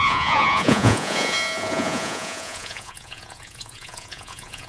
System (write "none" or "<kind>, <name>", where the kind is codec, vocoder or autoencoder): vocoder, Vocos